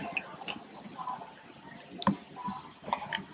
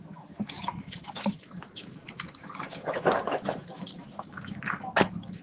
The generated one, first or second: second